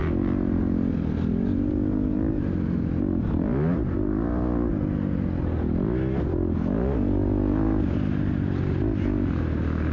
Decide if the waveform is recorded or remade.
recorded